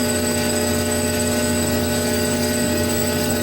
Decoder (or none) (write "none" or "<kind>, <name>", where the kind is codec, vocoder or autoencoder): codec, DAC